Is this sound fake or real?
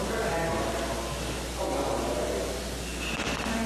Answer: real